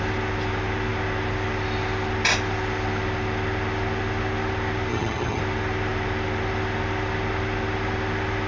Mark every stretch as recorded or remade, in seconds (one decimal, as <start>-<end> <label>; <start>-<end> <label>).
0.0-4.9 recorded; 4.9-5.4 remade; 5.4-8.5 recorded